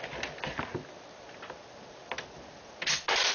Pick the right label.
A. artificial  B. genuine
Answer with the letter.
B